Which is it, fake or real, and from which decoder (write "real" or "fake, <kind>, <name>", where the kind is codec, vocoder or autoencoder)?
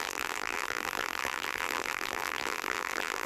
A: fake, vocoder, BigVGAN v2